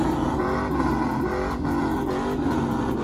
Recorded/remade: recorded